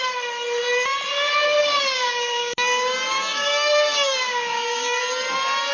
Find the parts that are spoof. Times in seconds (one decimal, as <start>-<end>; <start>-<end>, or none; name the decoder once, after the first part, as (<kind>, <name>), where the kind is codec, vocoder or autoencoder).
1.6-5.0 (codec, DAC)